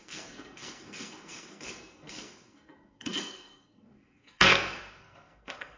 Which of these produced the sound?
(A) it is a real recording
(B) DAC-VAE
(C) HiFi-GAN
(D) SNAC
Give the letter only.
D